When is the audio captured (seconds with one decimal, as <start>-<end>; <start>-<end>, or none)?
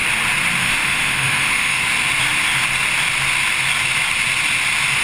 0.0-0.6; 1.9-5.0